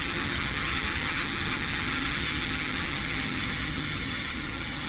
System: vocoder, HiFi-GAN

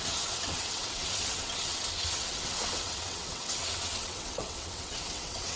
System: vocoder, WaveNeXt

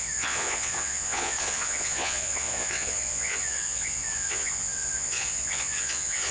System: vocoder, Vocos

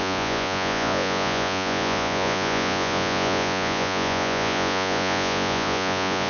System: vocoder, Vocos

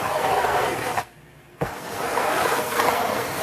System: codec, SNAC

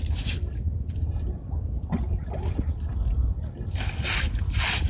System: none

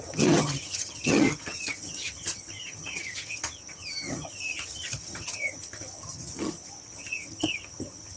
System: vocoder, HiFi-GAN